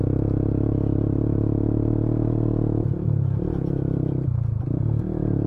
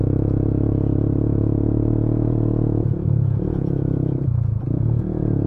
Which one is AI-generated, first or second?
second